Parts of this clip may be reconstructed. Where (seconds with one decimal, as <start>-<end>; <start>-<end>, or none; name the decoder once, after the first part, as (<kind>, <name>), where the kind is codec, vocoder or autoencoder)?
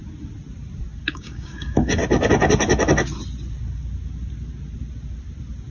1.1-2.0 (codec, DAC)